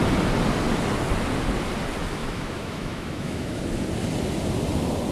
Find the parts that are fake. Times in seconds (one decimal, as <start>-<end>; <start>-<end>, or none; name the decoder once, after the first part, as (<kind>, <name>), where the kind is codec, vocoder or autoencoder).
2.2-3.6 (autoencoder, DAC-VAE)